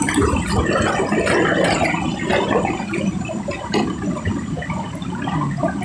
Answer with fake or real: real